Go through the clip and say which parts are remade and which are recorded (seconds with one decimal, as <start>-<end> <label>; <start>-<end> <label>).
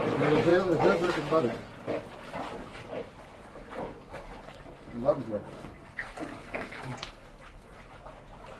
0.0-4.4 recorded; 4.4-7.8 remade; 7.8-8.6 recorded